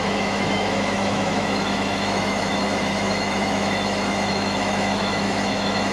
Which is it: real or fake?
fake